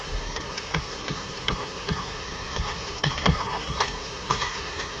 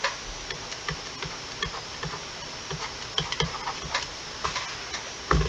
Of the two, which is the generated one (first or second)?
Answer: first